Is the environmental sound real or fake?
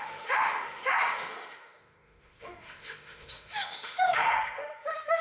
fake